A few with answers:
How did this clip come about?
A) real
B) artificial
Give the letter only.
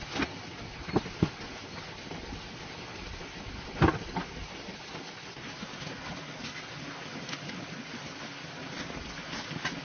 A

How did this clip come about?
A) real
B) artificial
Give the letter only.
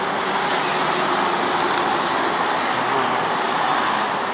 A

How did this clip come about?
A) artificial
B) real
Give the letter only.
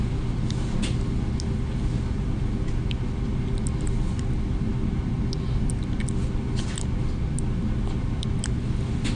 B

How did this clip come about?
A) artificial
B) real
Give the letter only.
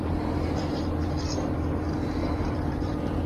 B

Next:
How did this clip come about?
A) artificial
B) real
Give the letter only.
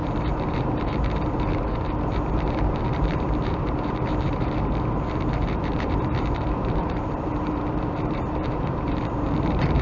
A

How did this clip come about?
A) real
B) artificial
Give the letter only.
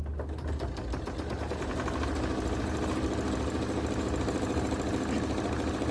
A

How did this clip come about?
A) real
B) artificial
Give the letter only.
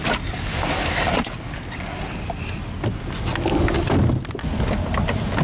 A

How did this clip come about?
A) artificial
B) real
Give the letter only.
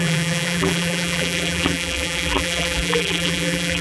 A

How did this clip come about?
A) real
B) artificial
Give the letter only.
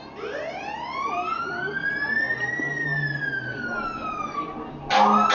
A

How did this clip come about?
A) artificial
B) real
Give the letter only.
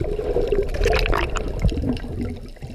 A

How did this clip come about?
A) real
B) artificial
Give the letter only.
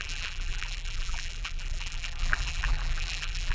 B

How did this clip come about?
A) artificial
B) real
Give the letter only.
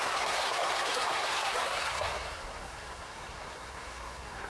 A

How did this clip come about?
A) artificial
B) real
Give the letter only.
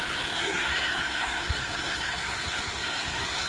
A